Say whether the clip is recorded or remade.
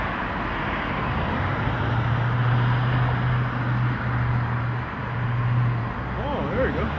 recorded